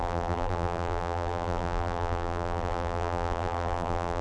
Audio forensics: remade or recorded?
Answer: remade